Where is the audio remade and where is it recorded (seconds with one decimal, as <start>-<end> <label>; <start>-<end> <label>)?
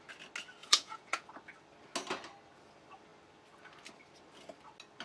0.0-0.6 recorded; 0.6-1.3 remade; 1.3-5.0 recorded